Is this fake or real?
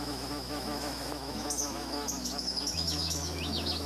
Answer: fake